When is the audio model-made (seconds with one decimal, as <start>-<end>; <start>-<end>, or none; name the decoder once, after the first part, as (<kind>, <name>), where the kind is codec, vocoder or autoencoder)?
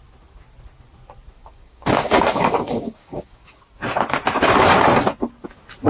1.4-3.6 (codec, DAC)